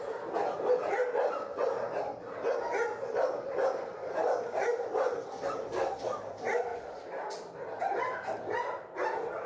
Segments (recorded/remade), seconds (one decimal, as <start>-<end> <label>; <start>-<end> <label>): 0.0-1.5 remade; 1.5-3.2 recorded; 3.2-6.7 remade; 6.7-7.8 recorded; 7.8-9.5 remade